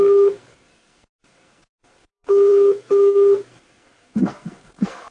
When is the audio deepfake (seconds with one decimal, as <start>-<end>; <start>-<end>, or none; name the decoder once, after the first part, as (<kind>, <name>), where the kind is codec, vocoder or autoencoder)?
0.0-5.1 (codec, SNAC)